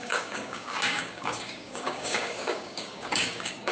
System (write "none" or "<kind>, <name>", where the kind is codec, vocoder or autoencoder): codec, DAC